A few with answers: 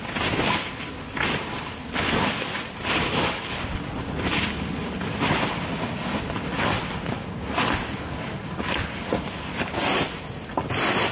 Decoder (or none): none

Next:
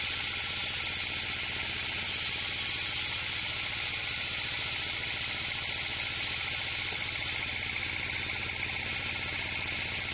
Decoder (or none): none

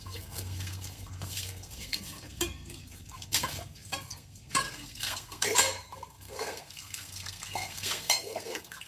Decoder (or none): codec, SNAC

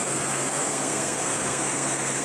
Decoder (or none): codec, SNAC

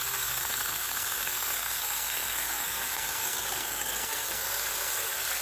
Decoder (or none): codec, SNAC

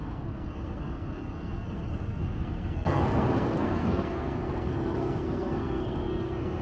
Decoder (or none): codec, SNAC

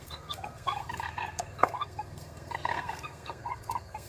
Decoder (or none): codec, SNAC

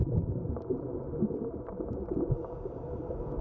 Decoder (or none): none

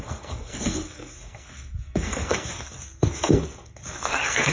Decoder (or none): codec, SNAC